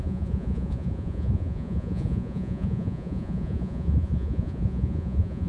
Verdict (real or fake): fake